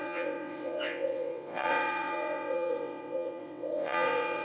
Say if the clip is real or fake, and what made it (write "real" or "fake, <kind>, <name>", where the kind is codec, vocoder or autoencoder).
fake, vocoder, WaveNeXt